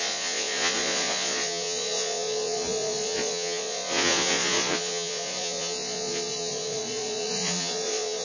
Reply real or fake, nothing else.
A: fake